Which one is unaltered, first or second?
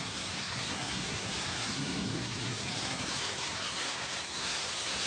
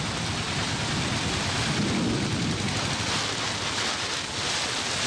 second